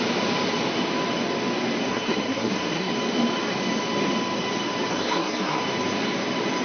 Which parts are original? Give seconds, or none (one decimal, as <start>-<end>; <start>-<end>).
0.0-1.9; 2.9-4.9; 5.6-6.6